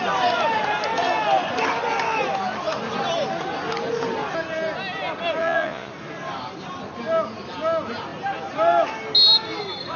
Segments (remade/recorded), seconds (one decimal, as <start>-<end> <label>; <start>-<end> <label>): 0.0-5.4 recorded; 5.4-5.9 remade; 5.9-10.0 recorded